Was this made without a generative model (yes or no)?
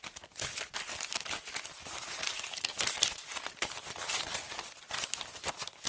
yes